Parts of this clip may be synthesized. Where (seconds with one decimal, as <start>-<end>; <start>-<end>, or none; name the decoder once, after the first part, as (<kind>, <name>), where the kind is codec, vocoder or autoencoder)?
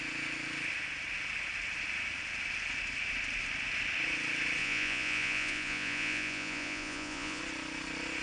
4.6-7.4 (vocoder, Vocos)